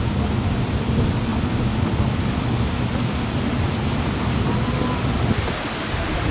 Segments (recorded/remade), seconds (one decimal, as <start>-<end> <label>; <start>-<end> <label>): 0.0-6.3 recorded